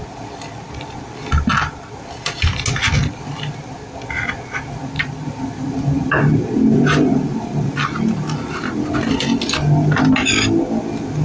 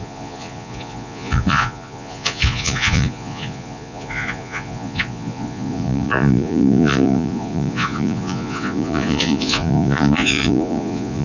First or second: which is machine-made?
second